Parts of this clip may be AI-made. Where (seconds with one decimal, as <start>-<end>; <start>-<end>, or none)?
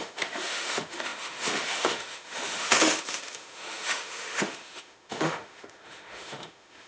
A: 0.0-6.9